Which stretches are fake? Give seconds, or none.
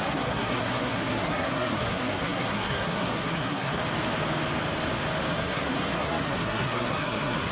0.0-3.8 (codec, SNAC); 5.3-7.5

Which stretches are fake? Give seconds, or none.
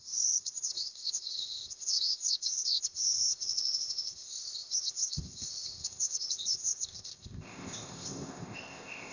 0.0-9.1 (codec, ZipCodec)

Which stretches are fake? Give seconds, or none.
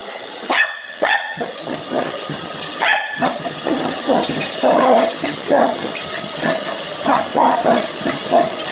0.0-8.7 (vocoder, HiFi-GAN)